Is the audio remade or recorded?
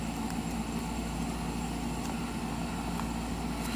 recorded